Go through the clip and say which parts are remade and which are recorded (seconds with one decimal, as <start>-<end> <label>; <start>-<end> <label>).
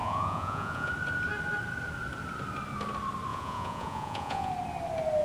0.0-0.9 remade; 0.9-3.3 recorded; 3.3-4.5 remade; 4.5-5.2 recorded